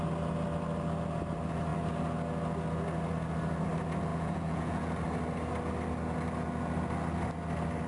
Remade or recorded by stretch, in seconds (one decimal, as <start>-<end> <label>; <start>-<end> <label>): 0.0-4.1 recorded; 4.1-4.9 remade; 4.9-7.9 recorded